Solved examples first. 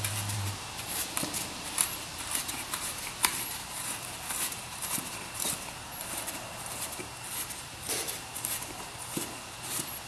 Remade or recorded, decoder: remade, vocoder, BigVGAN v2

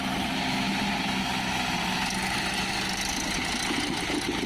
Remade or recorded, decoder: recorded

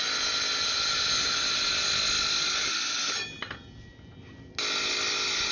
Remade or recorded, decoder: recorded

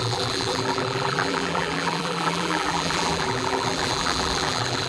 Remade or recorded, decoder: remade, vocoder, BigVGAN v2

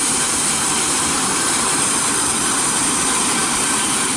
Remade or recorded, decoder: remade, vocoder, BigVGAN v2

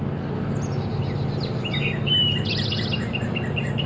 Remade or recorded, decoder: recorded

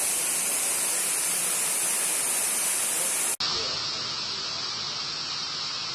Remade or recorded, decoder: recorded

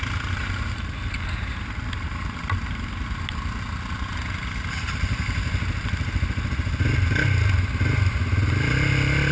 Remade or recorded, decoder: recorded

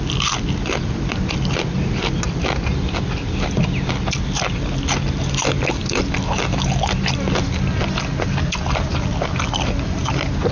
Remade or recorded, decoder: recorded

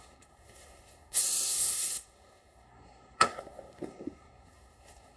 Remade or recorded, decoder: remade, codec, SNAC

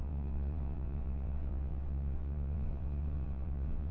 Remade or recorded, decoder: remade, vocoder, WaveNeXt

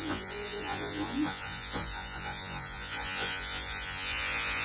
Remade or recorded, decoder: remade, vocoder, Vocos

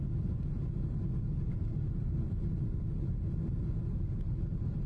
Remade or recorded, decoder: recorded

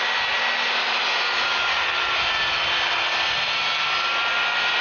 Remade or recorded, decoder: recorded